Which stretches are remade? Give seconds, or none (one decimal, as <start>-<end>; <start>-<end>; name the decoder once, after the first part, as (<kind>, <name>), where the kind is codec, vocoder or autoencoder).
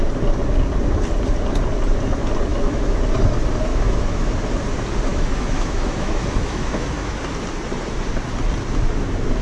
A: 2.5-3.0 (autoencoder, DAC-VAE); 3.7-4.3; 5.1-7.2